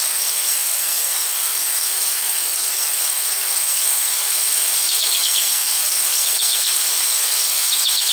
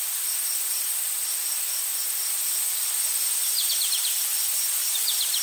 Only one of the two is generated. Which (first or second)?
first